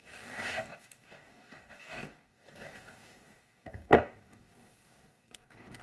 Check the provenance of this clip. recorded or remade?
remade